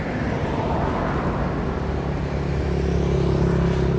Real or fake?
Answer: real